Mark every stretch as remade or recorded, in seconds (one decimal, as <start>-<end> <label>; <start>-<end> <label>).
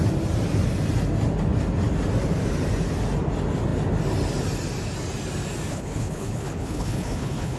0.0-5.7 recorded; 5.7-7.6 remade